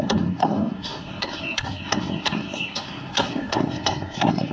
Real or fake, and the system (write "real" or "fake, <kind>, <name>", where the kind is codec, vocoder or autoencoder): fake, codec, SNAC